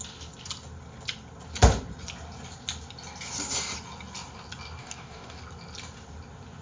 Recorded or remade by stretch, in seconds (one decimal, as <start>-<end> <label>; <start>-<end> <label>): 0.0-4.8 recorded; 4.8-5.4 remade; 5.4-6.6 recorded